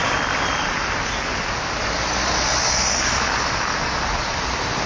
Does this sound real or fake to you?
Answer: real